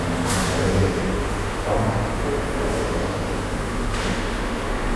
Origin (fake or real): fake